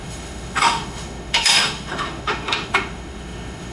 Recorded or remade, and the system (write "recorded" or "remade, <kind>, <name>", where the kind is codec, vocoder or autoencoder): remade, autoencoder, DAC-VAE